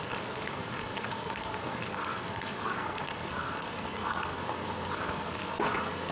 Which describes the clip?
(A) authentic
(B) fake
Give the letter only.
B